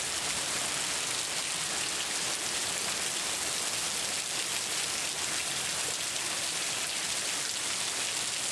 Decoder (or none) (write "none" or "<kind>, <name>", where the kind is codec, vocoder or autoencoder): none